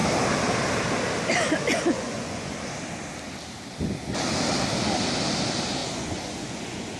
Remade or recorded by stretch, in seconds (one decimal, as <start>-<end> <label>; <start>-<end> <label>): 0.0-1.7 recorded; 1.7-2.5 remade; 2.5-5.8 recorded; 5.8-7.0 remade